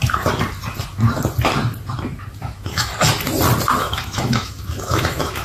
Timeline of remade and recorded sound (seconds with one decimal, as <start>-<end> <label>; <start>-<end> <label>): 0.0-2.4 recorded; 2.4-2.9 remade; 2.9-3.8 recorded; 3.8-5.4 remade